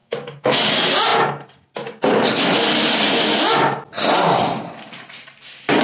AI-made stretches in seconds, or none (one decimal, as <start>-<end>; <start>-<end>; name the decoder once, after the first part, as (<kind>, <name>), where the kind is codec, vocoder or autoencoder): 0.0-0.5 (codec, DAC)